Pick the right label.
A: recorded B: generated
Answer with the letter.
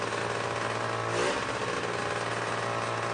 A